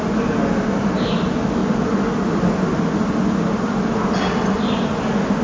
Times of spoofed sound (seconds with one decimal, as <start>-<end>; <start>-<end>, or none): none